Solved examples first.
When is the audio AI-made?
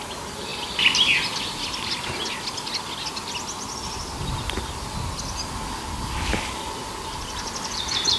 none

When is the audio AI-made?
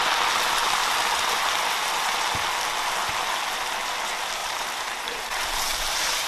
4.4-6.3 (vocoder, BigVGAN v2)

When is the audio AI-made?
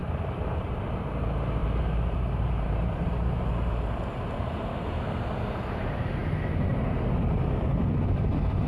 0.0-0.9 (vocoder, BigVGAN v2); 1.6-3.4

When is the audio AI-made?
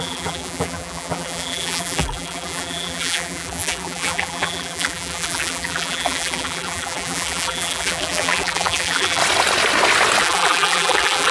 0.0-9.2 (vocoder, BigVGAN v2); 10.2-11.3